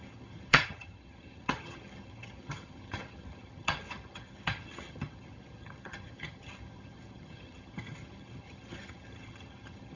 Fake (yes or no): yes